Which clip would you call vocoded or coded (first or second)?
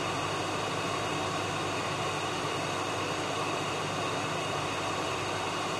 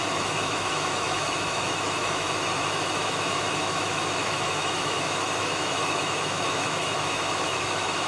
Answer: second